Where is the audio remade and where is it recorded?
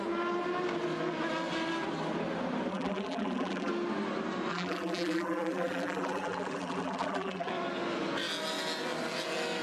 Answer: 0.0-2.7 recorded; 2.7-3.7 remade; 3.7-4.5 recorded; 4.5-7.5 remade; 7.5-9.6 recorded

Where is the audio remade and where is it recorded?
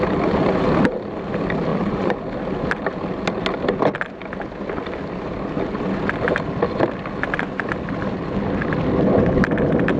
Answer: 0.0-1.7 recorded; 1.7-2.2 remade; 2.2-10.0 recorded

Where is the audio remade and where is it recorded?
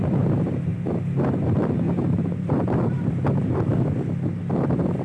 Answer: 0.0-0.7 remade; 0.7-1.7 recorded; 1.7-3.7 remade; 3.7-4.5 recorded; 4.5-5.0 remade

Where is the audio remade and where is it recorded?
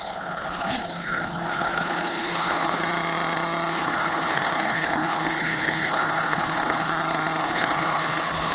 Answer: 0.0-2.8 remade; 2.8-3.7 recorded; 3.7-6.9 remade; 6.9-7.4 recorded; 7.4-8.5 remade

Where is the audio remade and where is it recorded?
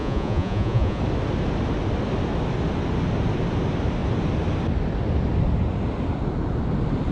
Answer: 0.0-1.0 remade; 1.0-7.1 recorded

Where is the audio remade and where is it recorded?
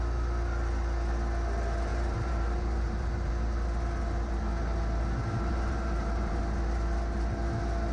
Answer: 0.0-1.9 recorded; 1.9-3.3 remade; 3.3-5.5 recorded; 5.5-6.4 remade; 6.4-7.9 recorded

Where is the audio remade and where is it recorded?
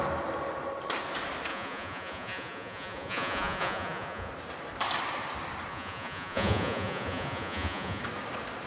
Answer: 0.0-1.5 recorded; 1.5-4.3 remade; 4.3-5.7 recorded; 5.7-8.0 remade; 8.0-8.7 recorded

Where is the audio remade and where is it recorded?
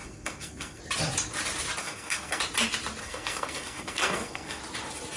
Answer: 0.0-0.8 remade; 0.8-1.8 recorded; 1.8-2.4 remade; 2.4-3.0 recorded; 3.0-4.6 remade; 4.6-5.2 recorded